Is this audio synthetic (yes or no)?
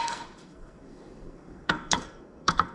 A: yes